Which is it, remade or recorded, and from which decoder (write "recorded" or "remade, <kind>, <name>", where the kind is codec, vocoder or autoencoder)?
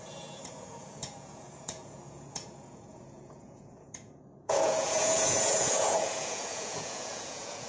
remade, vocoder, Vocos